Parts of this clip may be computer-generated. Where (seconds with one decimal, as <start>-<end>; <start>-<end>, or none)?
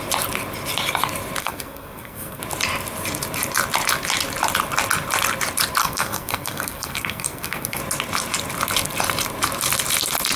1.4-2.4; 5.8-7.8